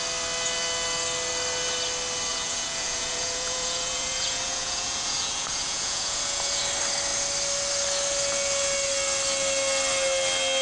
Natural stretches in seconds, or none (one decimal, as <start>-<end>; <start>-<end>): 0.0-2.3; 6.6-10.6